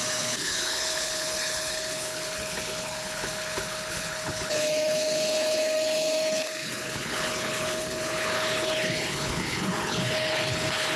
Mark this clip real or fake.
fake